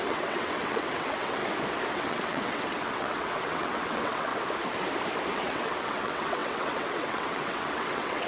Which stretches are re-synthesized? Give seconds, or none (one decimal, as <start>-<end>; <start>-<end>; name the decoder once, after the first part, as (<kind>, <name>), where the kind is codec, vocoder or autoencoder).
0.0-1.4 (vocoder, WaveNeXt); 1.9-4.3; 5.3-8.3